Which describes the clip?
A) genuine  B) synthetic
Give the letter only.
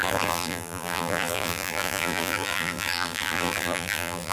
B